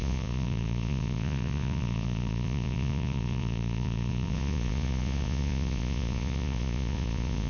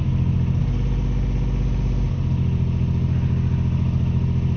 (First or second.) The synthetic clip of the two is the first